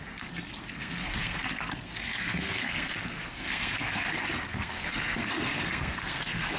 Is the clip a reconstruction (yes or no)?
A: yes